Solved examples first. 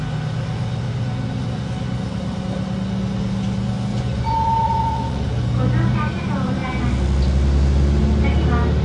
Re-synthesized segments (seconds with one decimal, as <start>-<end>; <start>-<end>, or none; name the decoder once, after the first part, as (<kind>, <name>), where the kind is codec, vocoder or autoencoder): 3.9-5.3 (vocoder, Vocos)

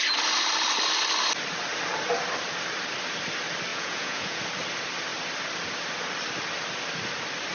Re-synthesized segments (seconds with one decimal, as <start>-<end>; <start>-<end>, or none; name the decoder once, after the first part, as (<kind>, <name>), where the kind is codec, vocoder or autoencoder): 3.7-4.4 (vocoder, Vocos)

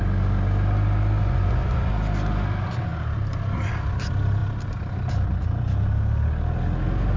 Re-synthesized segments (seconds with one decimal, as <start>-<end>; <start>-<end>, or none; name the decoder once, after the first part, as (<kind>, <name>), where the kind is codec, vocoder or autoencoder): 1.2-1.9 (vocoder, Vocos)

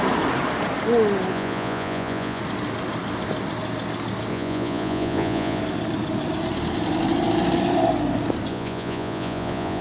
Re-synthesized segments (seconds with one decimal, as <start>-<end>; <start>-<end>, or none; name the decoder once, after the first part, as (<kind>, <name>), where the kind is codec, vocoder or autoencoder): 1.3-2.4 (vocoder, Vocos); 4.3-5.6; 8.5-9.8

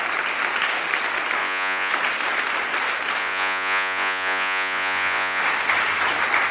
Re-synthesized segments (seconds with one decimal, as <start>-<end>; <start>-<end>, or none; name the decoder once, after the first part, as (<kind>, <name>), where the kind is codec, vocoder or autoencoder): 1.4-1.9 (vocoder, Vocos); 3.2-5.4

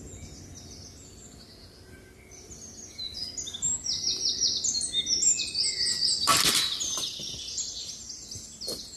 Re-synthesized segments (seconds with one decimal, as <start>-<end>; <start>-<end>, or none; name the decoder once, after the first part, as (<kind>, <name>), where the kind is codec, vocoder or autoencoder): none